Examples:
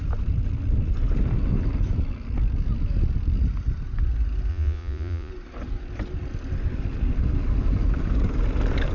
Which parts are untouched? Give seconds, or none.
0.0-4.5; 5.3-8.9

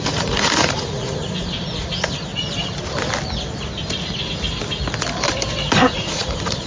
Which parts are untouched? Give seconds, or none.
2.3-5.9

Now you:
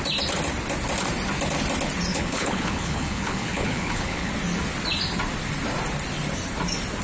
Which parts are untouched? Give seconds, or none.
0.0-2.1; 4.3-7.0

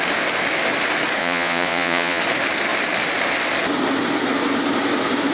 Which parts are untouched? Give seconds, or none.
0.0-1.2; 2.2-5.3